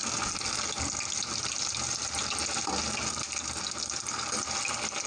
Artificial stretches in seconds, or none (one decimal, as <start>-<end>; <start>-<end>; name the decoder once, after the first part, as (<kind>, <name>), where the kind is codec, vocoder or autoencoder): none